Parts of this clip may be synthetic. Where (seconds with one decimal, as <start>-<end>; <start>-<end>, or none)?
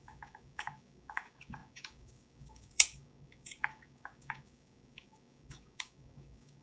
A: 0.0-6.6